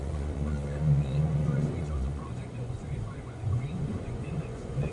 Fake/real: fake